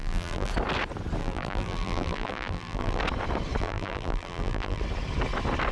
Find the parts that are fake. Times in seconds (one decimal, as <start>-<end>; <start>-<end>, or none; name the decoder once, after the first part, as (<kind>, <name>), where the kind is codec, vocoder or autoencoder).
0.0-0.5 (vocoder, BigVGAN v2); 1.2-3.0; 3.6-4.8